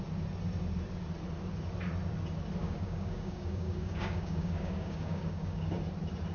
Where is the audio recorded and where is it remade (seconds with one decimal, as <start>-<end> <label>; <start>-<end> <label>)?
0.0-2.6 recorded; 2.6-5.7 remade; 5.7-6.3 recorded

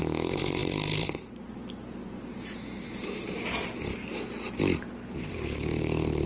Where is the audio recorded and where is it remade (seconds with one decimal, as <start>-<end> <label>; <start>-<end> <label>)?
0.0-6.3 recorded

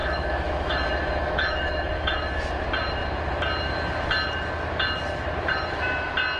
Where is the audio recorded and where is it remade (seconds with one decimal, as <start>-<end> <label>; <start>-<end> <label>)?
0.0-2.5 remade; 2.5-6.4 recorded

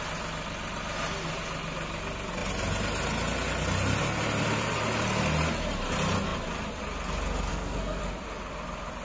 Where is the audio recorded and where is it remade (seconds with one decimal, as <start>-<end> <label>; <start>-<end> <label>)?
0.0-7.5 recorded; 7.5-8.0 remade; 8.0-9.0 recorded